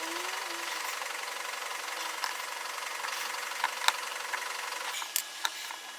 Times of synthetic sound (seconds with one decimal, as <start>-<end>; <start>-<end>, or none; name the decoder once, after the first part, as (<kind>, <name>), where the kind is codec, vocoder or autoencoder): none